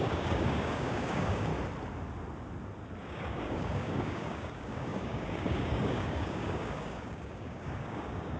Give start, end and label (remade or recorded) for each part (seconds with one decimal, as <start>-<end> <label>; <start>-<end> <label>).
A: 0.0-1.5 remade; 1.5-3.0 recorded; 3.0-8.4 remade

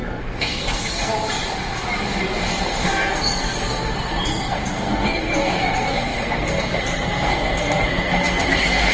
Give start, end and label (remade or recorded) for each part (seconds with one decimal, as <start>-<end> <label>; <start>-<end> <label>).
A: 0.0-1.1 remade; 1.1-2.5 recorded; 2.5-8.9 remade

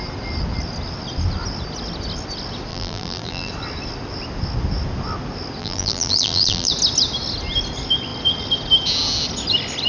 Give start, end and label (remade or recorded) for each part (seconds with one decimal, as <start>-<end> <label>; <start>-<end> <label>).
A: 0.0-2.7 recorded; 2.7-3.5 remade; 3.5-5.6 recorded; 5.6-6.7 remade; 6.7-9.9 recorded

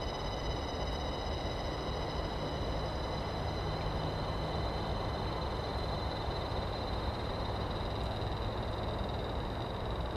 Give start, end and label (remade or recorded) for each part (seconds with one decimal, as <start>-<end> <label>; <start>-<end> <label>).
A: 0.0-5.7 recorded; 5.7-7.8 remade; 7.8-10.2 recorded

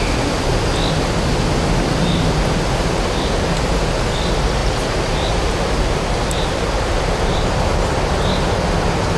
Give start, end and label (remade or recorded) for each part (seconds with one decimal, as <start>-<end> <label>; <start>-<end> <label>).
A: 0.0-4.6 recorded; 4.6-7.5 remade; 7.5-9.2 recorded

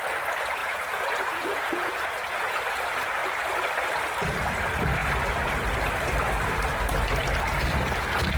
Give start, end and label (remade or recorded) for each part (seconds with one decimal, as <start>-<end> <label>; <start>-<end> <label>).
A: 0.0-0.6 recorded; 0.6-2.6 remade; 2.6-8.4 recorded

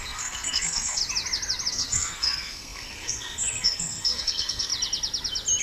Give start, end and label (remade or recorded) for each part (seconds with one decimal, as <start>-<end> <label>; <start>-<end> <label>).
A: 0.0-1.0 remade; 1.0-1.7 recorded; 1.7-4.7 remade; 4.7-5.6 recorded